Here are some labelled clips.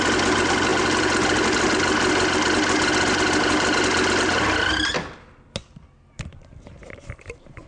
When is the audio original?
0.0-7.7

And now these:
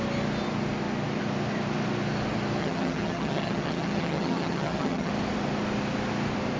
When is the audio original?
0.0-2.6; 5.1-6.6

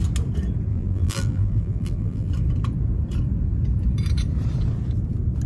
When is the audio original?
0.0-0.7; 2.3-5.5

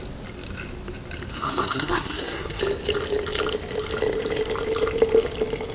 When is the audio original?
0.0-1.3; 2.6-5.7

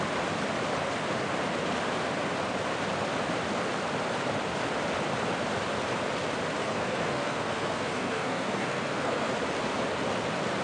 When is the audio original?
0.0-6.6; 9.3-10.6

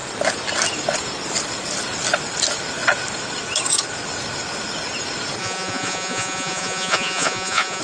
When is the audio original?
0.0-5.4

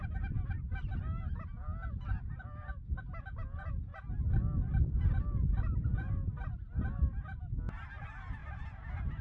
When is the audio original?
0.0-8.4

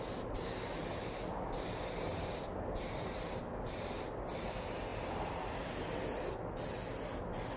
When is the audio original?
0.0-2.1; 2.8-7.6